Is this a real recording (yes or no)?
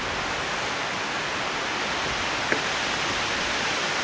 yes